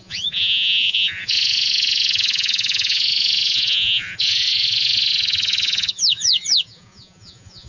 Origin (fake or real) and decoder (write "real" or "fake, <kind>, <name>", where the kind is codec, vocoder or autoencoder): fake, vocoder, Vocos